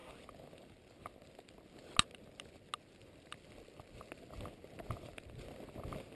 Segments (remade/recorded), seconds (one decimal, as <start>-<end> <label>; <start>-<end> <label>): 0.0-6.2 recorded